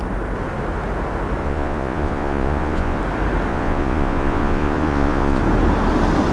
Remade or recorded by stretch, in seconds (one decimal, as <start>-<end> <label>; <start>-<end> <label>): 0.0-1.4 recorded; 1.4-3.0 remade; 3.0-3.5 recorded; 3.5-5.4 remade; 5.4-6.3 recorded